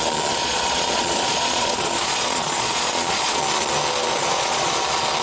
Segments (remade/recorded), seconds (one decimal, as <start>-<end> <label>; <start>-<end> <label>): 0.0-0.4 recorded; 0.4-3.4 remade; 3.4-4.1 recorded; 4.1-4.7 remade; 4.7-5.2 recorded